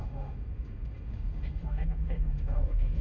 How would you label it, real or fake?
fake